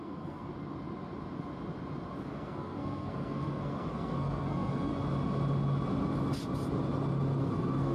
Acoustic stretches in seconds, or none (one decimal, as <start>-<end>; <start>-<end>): 0.5-2.2; 4.9-7.4

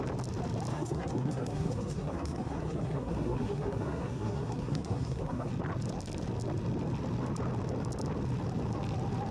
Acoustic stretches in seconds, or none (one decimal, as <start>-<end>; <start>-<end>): 0.0-0.7; 5.5-9.3

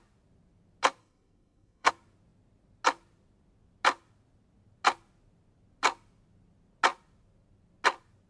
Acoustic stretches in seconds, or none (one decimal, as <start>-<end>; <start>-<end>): 0.0-1.0; 1.9-8.3

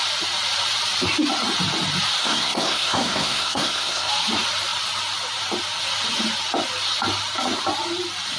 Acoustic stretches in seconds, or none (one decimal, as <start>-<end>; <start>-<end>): 0.0-2.2; 4.1-8.4

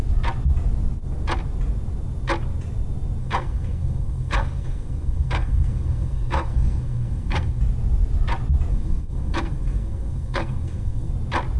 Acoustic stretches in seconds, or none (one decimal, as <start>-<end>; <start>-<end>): 0.0-3.2; 7.6-8.7; 11.1-11.6